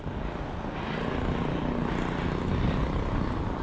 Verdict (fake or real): real